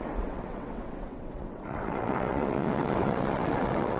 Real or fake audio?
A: fake